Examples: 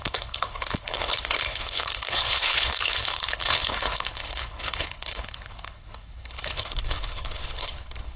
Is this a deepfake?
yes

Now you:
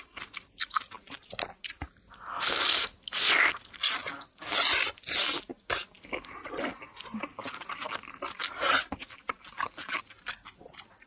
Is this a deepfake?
no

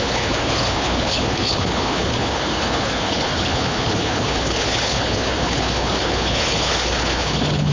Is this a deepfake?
yes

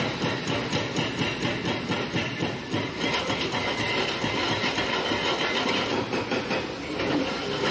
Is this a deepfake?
no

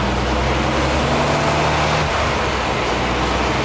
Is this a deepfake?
no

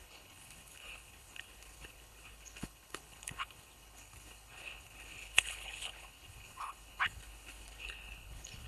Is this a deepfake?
yes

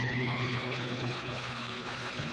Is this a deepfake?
yes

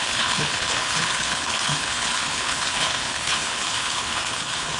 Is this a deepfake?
yes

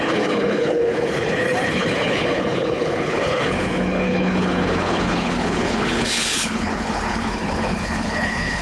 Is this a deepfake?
yes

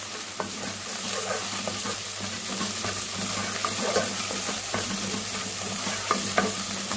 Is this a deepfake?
no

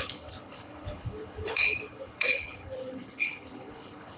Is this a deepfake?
yes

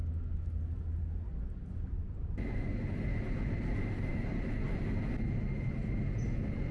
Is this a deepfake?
no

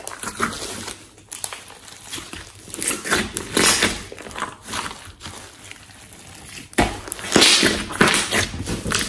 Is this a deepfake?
no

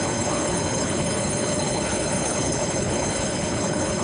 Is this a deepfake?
yes